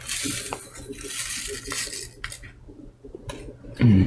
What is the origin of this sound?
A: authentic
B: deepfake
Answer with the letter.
A